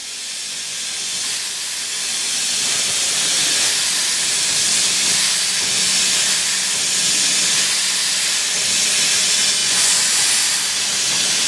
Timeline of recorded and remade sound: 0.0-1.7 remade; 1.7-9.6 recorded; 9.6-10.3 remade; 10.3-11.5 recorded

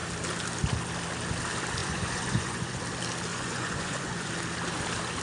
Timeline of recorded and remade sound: 0.0-1.8 recorded; 1.8-2.8 remade; 2.8-3.3 recorded; 3.3-4.3 remade; 4.3-5.2 recorded